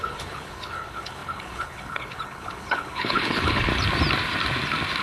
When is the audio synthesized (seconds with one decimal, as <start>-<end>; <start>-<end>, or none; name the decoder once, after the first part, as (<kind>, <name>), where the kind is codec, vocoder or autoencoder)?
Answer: 0.0-3.7 (codec, HILCodec)

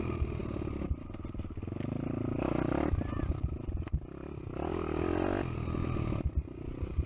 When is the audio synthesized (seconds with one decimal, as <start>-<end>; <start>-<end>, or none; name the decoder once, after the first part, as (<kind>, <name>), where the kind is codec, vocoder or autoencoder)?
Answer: none

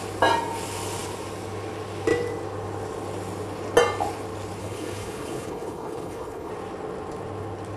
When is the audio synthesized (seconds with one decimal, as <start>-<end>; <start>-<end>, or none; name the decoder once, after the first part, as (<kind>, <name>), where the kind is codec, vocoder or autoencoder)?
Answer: 4.6-6.5 (codec, HILCodec)

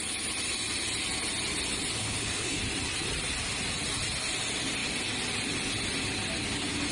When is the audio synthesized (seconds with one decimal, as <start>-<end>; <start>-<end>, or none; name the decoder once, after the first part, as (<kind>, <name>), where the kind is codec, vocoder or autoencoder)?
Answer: 2.0-2.6 (codec, HILCodec)